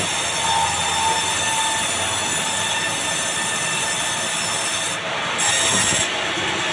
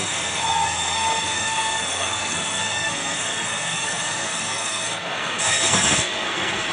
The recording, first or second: first